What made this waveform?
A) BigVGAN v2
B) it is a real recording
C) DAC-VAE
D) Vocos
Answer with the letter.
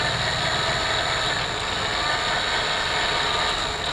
B